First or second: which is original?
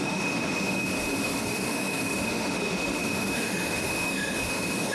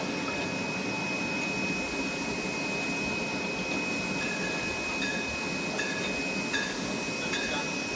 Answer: second